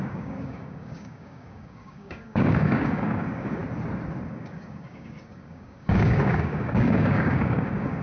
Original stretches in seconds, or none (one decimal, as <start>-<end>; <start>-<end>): 3.6-4.3

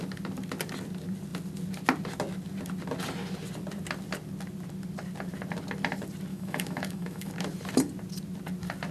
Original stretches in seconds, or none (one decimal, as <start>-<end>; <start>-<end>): 0.0-6.3; 7.3-8.9

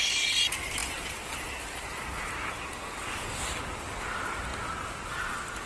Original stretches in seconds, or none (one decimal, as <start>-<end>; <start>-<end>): 0.0-5.7

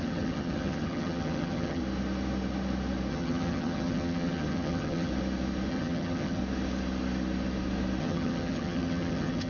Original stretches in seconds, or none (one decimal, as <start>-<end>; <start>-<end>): 1.8-3.1; 5.1-5.7; 6.4-8.0

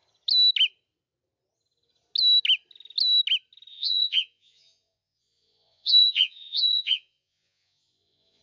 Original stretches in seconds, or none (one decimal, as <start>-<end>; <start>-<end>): 0.0-3.7